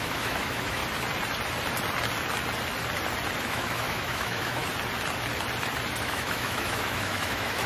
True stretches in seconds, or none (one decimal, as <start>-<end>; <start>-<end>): 0.8-3.4; 4.6-6.0